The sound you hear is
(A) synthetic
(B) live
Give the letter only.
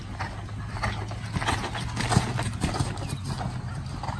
B